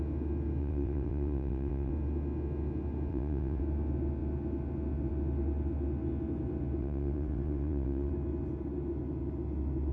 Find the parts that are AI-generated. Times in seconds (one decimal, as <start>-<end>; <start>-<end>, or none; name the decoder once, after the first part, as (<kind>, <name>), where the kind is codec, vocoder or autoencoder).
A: 0.6-1.9 (vocoder, WaveNeXt); 3.1-3.6; 6.8-8.1